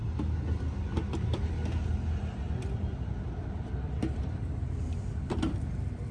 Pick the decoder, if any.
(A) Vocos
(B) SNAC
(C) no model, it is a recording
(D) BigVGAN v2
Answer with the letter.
C